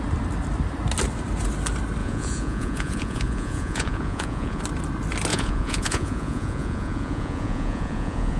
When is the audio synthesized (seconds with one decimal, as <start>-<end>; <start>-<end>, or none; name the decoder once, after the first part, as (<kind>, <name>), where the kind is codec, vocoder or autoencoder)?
2.0-4.6 (vocoder, Vocos); 5.3-8.4